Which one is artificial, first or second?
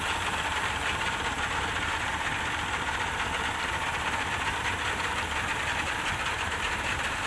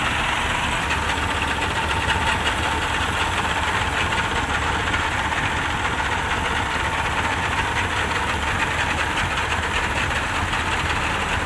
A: first